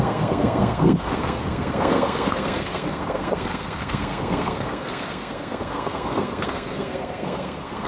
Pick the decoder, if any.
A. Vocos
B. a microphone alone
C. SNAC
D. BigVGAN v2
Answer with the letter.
C